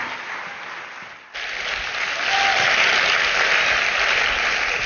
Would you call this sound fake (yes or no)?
no